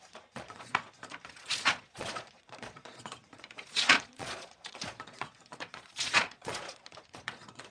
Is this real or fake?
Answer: fake